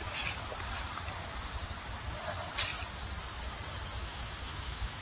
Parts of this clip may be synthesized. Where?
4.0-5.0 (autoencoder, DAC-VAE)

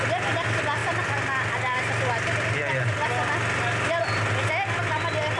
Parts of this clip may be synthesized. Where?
none

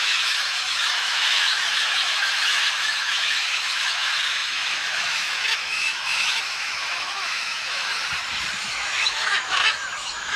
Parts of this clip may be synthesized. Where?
0.0-7.9 (autoencoder, DAC-VAE); 8.6-10.4

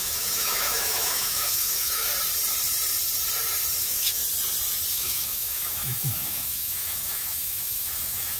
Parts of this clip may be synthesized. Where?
0.0-2.1 (autoencoder, DAC-VAE); 3.8-4.2; 4.9-8.4

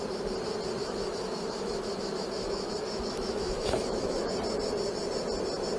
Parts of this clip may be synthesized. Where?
0.8-4.3 (autoencoder, DAC-VAE)

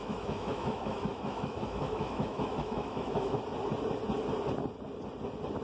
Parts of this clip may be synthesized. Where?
0.0-3.4 (autoencoder, DAC-VAE)

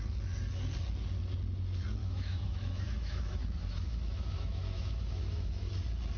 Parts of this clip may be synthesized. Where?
2.0-5.7 (autoencoder, DAC-VAE)